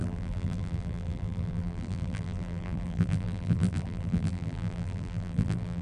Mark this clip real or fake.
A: fake